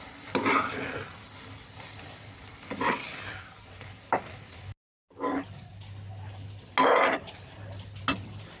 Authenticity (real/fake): real